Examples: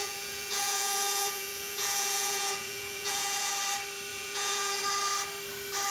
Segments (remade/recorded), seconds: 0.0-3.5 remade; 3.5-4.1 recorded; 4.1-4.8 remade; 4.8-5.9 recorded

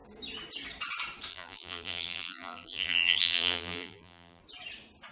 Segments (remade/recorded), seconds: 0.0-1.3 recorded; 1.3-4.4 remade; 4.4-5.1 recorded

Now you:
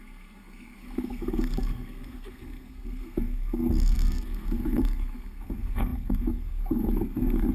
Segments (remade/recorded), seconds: 0.0-7.5 remade

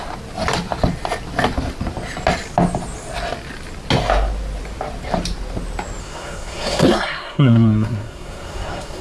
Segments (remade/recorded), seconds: 0.0-6.0 recorded; 6.0-9.0 remade